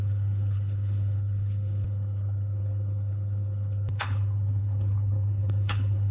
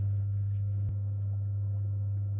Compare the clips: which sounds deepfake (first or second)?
first